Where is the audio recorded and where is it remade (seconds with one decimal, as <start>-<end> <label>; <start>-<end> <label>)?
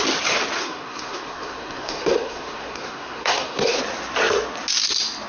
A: 0.0-0.6 recorded; 0.6-3.8 remade; 3.8-5.3 recorded